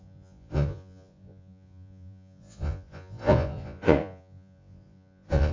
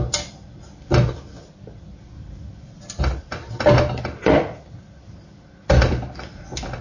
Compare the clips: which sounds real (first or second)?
second